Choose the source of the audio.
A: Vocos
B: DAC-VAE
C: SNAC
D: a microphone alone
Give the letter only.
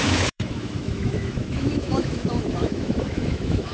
B